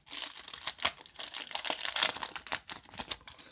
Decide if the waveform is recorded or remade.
recorded